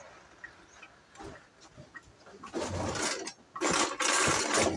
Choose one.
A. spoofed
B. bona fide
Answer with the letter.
B